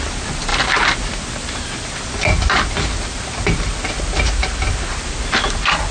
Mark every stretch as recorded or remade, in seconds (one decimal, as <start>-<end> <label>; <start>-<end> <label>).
0.0-5.9 recorded